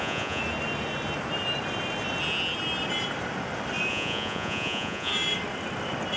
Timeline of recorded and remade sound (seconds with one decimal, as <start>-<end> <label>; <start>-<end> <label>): 0.0-0.4 remade; 0.4-3.9 recorded; 3.9-5.1 remade; 5.1-6.2 recorded